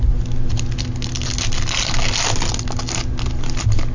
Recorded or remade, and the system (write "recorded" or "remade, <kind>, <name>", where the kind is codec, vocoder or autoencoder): recorded